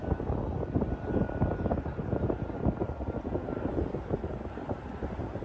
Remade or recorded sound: recorded